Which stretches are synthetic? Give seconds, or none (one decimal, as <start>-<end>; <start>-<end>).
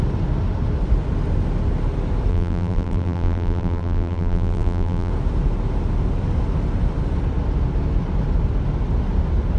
2.3-5.1